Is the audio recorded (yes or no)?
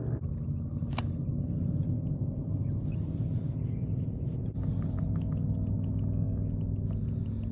yes